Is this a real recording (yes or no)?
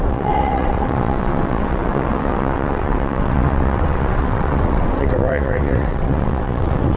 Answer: no